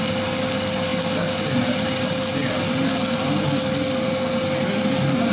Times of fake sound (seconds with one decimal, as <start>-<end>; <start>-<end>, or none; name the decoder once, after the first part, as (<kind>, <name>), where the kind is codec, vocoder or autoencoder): none